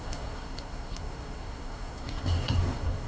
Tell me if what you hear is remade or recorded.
remade